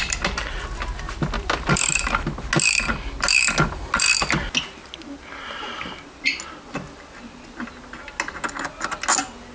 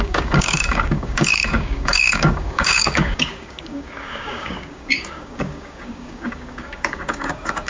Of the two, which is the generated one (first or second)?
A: second